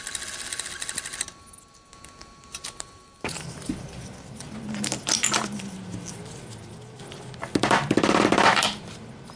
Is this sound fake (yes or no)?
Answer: no